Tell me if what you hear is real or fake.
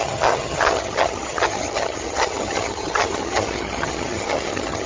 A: fake